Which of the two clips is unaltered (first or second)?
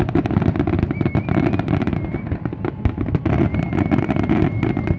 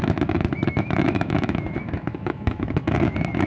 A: first